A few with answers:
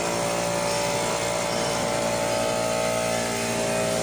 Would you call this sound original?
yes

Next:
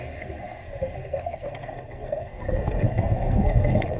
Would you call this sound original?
no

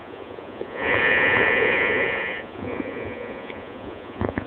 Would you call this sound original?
no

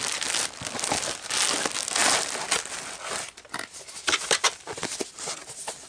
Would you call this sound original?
yes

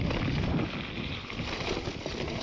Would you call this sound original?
yes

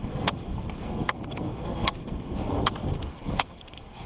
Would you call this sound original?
no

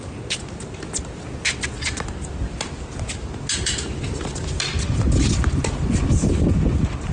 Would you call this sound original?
yes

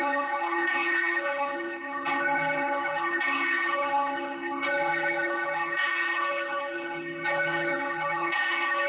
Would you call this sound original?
no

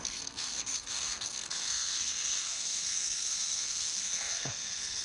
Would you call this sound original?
no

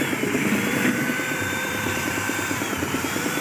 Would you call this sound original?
no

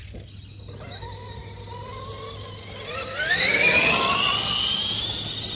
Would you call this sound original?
yes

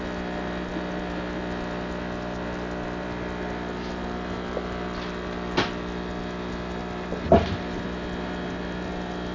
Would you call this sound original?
yes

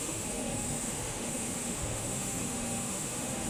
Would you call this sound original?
no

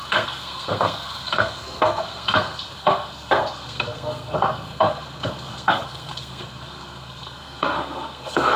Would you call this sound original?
no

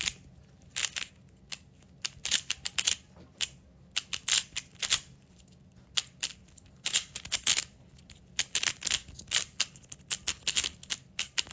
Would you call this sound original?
yes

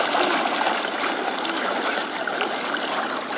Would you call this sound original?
yes